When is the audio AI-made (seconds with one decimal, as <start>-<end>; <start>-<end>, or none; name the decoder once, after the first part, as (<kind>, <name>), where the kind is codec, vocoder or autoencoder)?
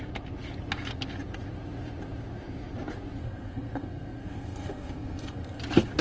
3.2-5.6 (codec, SNAC)